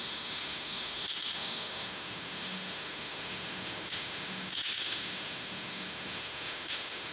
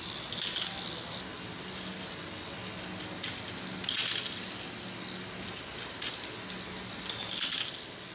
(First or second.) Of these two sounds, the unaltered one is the second